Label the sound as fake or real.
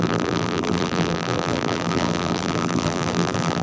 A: fake